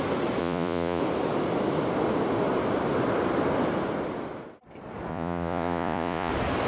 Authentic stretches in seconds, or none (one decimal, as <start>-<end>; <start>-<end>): 0.0-0.4; 1.0-5.1; 6.3-6.7